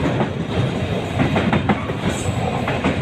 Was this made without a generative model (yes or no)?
yes